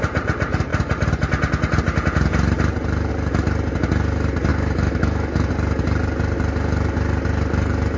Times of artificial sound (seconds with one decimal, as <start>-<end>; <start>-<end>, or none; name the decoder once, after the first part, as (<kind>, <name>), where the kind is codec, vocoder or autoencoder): 4.5-5.5 (autoencoder, DAC-VAE)